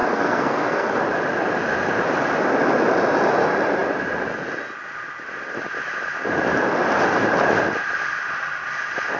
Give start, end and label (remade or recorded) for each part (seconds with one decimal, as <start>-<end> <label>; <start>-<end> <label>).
0.0-1.0 remade; 1.0-9.2 recorded

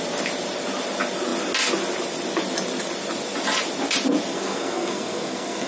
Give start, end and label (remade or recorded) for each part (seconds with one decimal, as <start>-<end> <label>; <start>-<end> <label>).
0.0-4.3 recorded; 4.3-5.7 remade

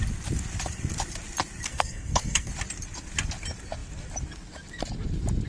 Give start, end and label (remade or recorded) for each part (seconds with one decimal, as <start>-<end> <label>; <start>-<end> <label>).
0.0-1.7 recorded; 1.7-2.5 remade; 2.5-5.5 recorded